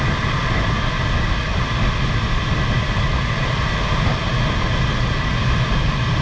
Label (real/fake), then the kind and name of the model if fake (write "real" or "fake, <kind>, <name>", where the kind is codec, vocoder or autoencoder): real